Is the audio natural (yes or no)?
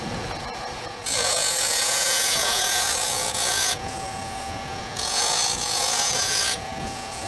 no